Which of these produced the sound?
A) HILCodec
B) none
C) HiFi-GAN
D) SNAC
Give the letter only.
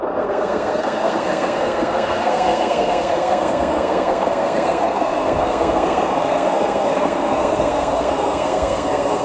D